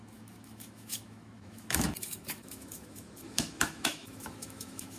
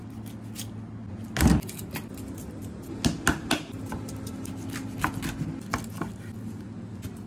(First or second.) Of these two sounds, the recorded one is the second